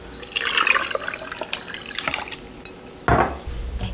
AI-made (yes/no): no